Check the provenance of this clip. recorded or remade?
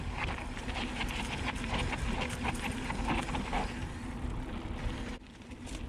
recorded